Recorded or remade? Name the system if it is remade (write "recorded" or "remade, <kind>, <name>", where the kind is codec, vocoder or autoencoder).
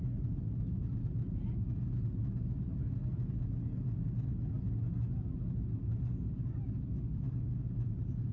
recorded